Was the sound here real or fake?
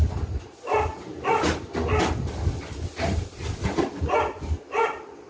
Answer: real